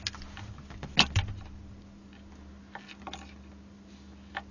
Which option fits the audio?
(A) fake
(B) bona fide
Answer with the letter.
B